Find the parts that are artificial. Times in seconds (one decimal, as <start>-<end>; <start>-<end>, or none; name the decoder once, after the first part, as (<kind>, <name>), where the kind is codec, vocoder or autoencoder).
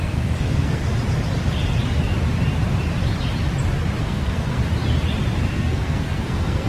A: 0.0-0.8 (codec, SNAC); 4.0-4.6; 5.5-6.7